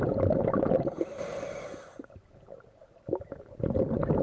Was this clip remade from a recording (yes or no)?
no